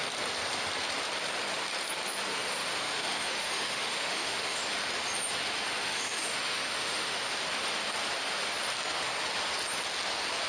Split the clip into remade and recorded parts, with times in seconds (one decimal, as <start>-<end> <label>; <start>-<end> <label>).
0.0-2.3 recorded; 2.3-4.6 remade; 4.6-5.8 recorded; 5.8-7.3 remade; 7.3-10.5 recorded